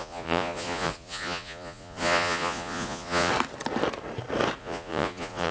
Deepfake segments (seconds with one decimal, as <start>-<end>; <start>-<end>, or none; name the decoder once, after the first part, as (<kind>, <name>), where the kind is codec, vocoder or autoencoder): 0.0-3.3 (vocoder, Vocos); 4.6-5.5